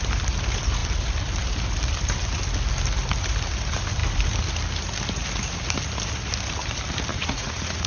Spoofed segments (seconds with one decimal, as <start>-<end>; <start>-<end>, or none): 7.1-7.9